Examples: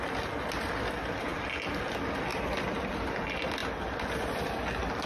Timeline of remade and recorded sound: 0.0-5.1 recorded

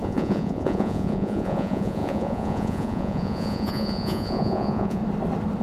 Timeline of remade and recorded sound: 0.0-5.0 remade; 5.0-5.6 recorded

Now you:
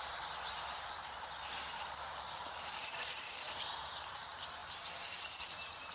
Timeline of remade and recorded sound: 0.0-4.6 remade; 4.6-5.9 recorded